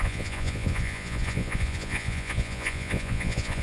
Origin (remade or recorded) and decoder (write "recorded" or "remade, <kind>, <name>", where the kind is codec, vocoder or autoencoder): remade, vocoder, Vocos